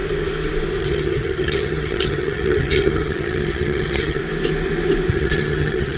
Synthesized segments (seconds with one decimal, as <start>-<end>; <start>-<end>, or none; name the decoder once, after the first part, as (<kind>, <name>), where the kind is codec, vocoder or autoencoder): 0.8-4.2 (vocoder, HiFi-GAN); 5.1-6.0